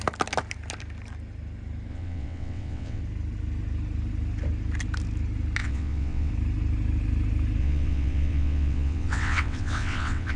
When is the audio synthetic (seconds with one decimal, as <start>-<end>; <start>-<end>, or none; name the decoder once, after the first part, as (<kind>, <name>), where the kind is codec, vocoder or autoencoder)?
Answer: 1.9-3.0 (vocoder, WaveNeXt); 5.6-6.3; 7.6-10.4